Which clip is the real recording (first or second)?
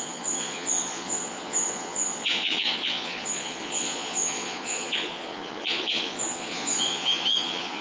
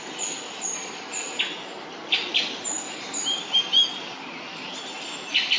second